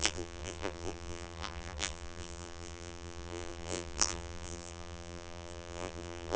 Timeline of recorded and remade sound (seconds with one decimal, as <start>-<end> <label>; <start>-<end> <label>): 0.0-6.4 remade